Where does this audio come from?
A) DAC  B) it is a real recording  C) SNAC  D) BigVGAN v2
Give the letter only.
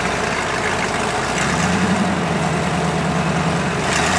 B